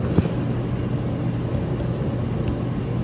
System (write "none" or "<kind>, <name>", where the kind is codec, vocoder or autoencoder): none